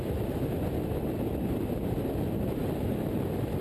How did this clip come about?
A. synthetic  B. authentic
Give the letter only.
B